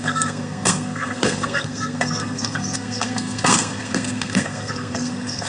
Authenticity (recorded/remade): remade